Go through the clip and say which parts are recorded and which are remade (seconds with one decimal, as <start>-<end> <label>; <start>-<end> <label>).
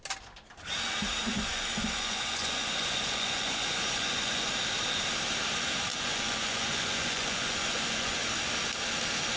0.0-1.2 recorded; 1.2-4.5 remade; 4.5-5.9 recorded; 5.9-8.2 remade; 8.2-9.4 recorded